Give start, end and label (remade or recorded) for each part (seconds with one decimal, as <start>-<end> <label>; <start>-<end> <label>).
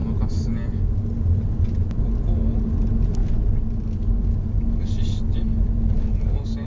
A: 0.0-6.7 recorded